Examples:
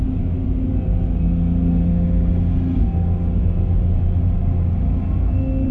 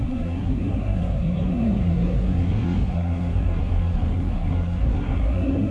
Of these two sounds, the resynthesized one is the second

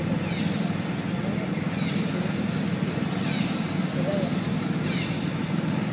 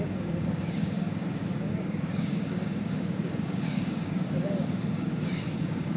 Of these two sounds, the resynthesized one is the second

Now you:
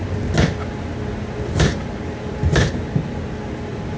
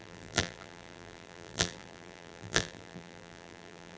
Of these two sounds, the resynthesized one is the second